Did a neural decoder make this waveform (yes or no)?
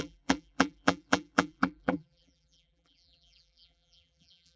yes